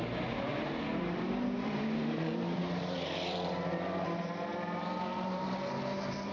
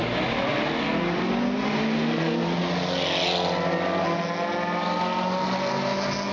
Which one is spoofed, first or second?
first